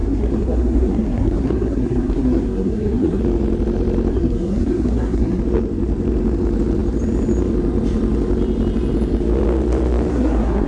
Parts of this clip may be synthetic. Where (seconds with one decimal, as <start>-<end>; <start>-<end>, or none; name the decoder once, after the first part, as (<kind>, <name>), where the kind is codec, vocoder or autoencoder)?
0.0-3.2 (codec, SNAC); 4.1-5.4; 10.1-10.7